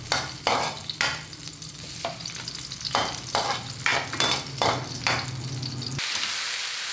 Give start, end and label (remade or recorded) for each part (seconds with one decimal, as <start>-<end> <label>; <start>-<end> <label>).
0.0-6.9 recorded